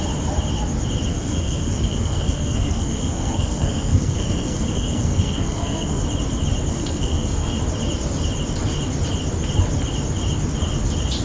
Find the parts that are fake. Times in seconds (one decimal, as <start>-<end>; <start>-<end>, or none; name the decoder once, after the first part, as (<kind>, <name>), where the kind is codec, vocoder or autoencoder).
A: 1.1-6.0 (codec, SNAC); 6.7-7.6